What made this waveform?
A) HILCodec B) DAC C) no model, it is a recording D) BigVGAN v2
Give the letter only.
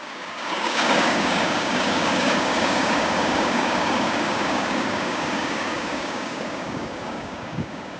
B